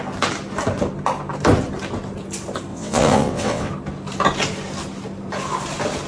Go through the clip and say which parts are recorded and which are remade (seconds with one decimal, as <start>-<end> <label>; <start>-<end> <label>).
0.0-2.7 recorded; 2.7-3.7 remade; 3.7-6.1 recorded